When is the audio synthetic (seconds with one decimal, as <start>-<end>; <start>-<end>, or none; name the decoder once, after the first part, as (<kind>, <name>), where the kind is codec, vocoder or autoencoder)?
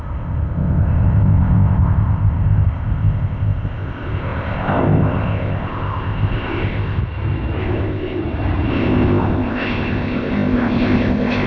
0.0-7.0 (codec, ZipCodec); 7.6-8.2; 8.7-11.5